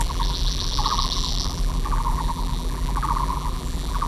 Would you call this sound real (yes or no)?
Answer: no